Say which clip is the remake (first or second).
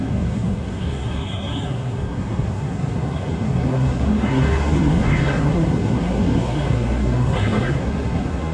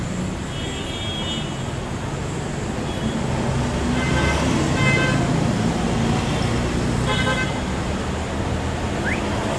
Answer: first